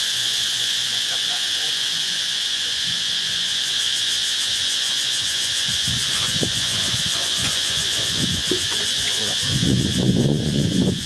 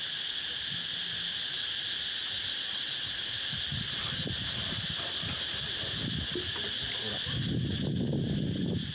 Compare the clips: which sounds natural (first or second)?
second